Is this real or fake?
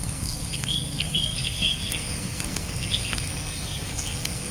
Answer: fake